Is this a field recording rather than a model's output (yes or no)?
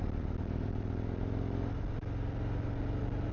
yes